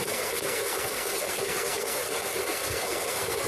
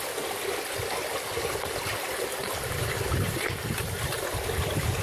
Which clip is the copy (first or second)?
first